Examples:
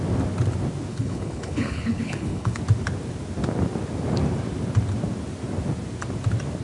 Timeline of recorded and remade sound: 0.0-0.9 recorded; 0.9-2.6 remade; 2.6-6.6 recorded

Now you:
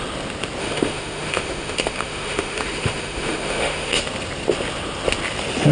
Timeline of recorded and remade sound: 0.0-0.6 recorded; 0.6-4.0 remade; 4.0-5.7 recorded

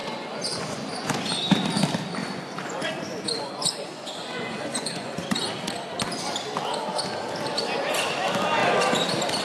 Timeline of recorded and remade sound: 0.0-1.3 remade; 1.3-2.2 recorded; 2.2-5.5 remade; 5.5-9.4 recorded

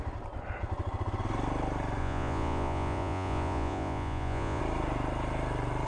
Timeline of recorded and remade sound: 0.0-2.0 recorded; 2.0-4.6 remade; 4.6-5.9 recorded

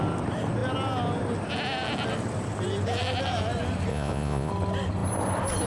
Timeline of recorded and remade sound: 0.0-3.9 recorded; 3.9-4.5 remade; 4.5-5.7 recorded

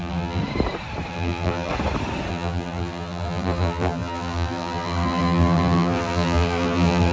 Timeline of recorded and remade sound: 0.0-0.4 remade; 0.4-1.1 recorded; 1.1-1.7 remade; 1.7-2.3 recorded; 2.3-7.1 remade

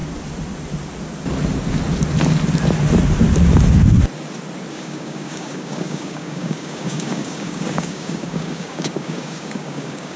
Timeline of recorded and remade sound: 0.0-4.7 recorded; 4.7-10.2 remade